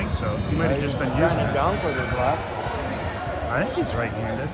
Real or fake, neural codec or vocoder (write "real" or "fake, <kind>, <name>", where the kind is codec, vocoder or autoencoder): real